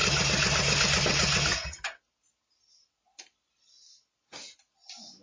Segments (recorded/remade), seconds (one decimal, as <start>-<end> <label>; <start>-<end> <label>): 0.0-5.2 recorded

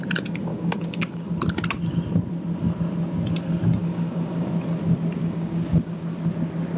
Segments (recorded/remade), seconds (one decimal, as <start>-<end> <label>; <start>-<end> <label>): 0.0-0.5 recorded; 0.5-1.3 remade; 1.3-3.8 recorded; 3.8-4.5 remade; 4.5-5.2 recorded; 5.2-6.0 remade; 6.0-6.8 recorded

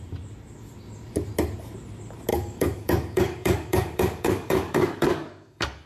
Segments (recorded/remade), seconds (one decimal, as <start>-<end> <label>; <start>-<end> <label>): 0.0-2.3 recorded; 2.3-5.9 remade